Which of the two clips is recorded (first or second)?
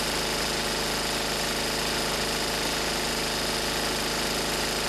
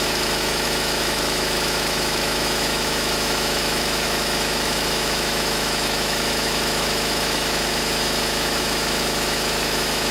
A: first